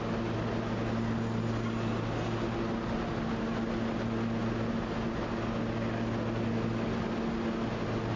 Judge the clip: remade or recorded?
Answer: recorded